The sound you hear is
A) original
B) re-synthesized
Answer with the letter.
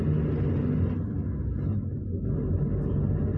A